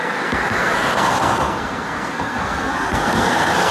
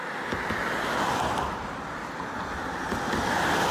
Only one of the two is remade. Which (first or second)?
first